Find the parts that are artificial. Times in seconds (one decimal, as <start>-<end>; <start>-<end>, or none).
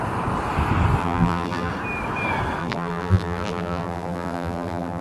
1.0-1.7; 2.6-5.0